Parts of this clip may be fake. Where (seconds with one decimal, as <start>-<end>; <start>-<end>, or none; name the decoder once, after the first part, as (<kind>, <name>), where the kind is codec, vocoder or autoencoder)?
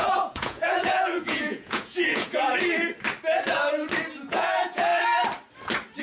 0.0-2.5 (vocoder, Vocos); 4.2-4.9